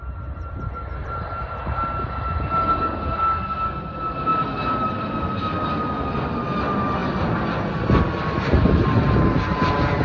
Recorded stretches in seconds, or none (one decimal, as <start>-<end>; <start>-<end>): 0.0-1.0; 1.7-4.3; 6.3-10.0